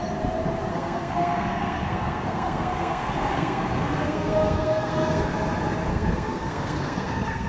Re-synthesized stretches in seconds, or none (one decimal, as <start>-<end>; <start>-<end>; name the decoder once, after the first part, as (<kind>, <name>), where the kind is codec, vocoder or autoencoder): 0.7-5.2 (codec, SNAC); 5.9-7.5